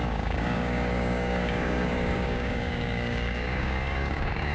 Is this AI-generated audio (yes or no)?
yes